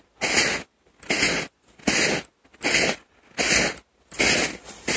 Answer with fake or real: real